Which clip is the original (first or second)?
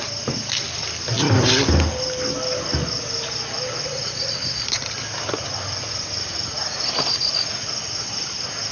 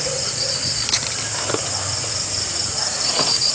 first